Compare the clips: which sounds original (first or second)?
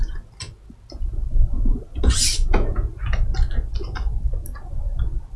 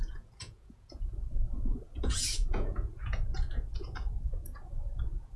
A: first